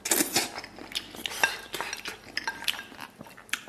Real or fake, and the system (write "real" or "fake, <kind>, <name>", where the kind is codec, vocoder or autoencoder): real